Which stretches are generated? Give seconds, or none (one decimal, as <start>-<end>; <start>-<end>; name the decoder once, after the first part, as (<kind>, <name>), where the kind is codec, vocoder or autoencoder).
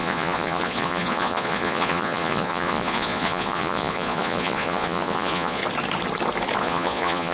0.0-5.6 (vocoder, Vocos); 6.6-7.3